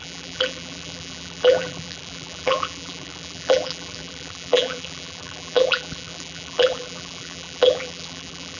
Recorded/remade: remade